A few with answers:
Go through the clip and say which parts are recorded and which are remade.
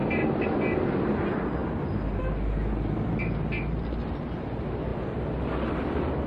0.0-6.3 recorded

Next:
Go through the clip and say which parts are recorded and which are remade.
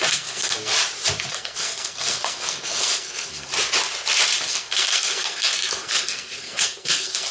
0.0-0.7 remade; 0.7-1.3 recorded; 1.3-3.5 remade; 3.5-4.5 recorded; 4.5-7.3 remade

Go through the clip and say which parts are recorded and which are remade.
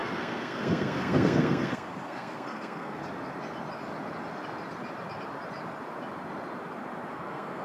0.0-3.0 remade; 3.0-7.1 recorded; 7.1-7.6 remade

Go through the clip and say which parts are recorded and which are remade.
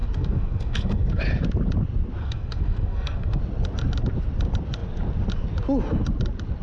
0.0-1.2 remade; 1.2-2.2 recorded; 2.2-3.4 remade; 3.4-6.6 recorded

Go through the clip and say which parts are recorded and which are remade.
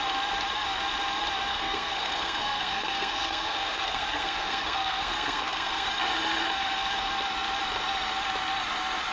0.0-1.5 recorded; 1.5-5.9 remade; 5.9-9.1 recorded